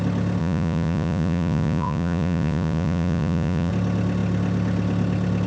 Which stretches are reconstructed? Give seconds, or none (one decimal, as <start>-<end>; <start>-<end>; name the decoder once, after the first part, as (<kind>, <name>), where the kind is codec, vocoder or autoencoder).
0.4-3.7 (vocoder, Vocos)